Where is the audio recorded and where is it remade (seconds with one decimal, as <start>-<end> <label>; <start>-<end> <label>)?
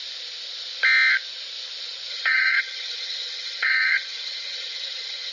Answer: 0.0-2.1 recorded; 2.1-5.3 remade